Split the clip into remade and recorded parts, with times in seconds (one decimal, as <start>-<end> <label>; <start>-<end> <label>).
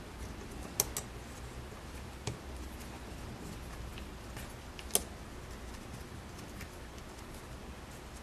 0.0-8.2 recorded